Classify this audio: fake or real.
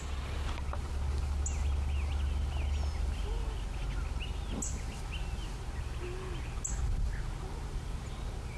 real